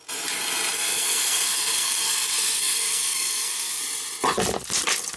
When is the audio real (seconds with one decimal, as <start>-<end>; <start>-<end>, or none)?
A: 0.0-0.7; 3.8-5.2